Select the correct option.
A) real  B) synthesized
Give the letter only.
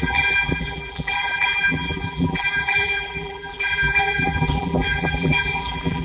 B